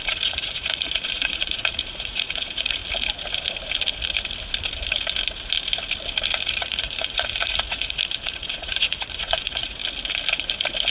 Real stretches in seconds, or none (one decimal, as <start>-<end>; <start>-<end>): 2.8-6.4; 9.8-10.9